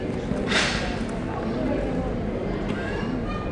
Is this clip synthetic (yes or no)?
no